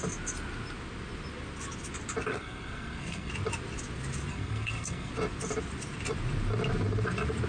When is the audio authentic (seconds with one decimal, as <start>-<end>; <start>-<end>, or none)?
0.0-2.3; 3.3-4.3; 5.1-7.5